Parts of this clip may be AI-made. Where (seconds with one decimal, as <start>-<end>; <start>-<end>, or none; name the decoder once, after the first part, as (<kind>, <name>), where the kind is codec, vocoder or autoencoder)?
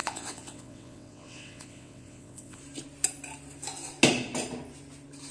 0.0-2.6 (vocoder, WaveNeXt)